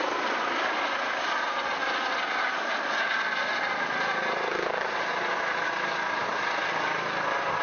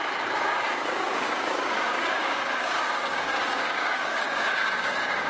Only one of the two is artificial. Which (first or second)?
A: second